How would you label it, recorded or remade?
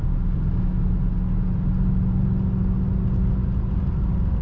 recorded